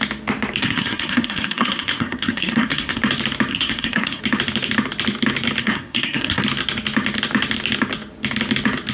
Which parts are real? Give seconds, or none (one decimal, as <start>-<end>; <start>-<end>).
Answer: 0.0-0.6; 3.0-3.5; 4.2-5.6; 6.4-8.9